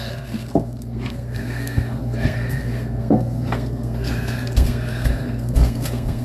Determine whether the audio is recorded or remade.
remade